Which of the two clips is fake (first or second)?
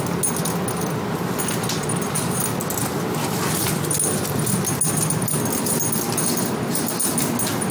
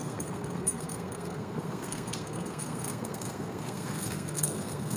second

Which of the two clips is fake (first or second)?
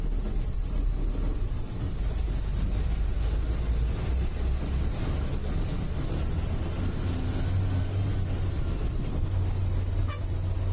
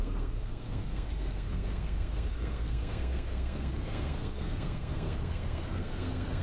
second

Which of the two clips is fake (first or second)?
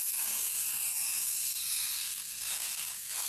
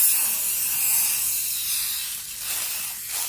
first